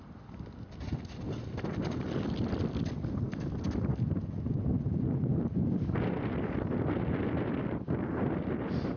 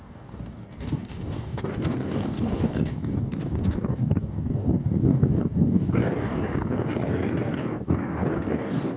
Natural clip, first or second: first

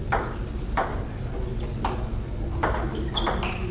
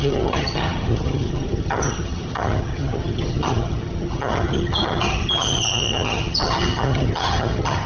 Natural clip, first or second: first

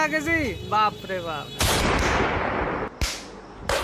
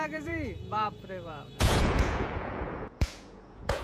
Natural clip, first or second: first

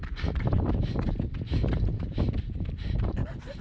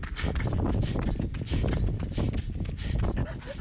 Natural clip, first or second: second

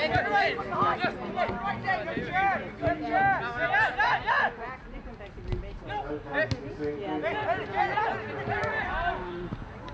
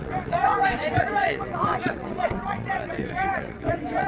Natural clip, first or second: first